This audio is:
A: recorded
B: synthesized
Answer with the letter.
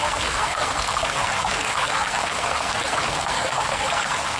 B